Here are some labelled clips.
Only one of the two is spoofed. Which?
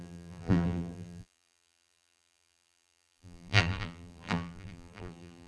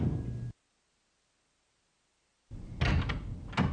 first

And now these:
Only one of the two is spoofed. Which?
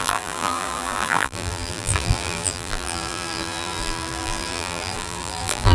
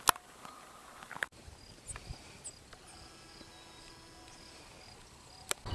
first